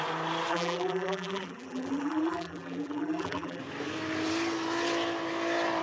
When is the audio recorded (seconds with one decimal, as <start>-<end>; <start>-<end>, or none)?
0.0-0.5; 3.6-5.8